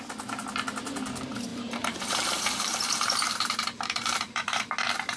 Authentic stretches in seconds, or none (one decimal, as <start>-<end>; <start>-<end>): 0.0-1.5; 4.6-5.2